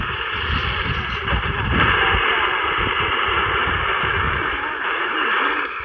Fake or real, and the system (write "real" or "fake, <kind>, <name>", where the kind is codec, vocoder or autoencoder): fake, vocoder, BigVGAN v2